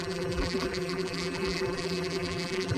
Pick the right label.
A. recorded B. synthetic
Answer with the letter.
B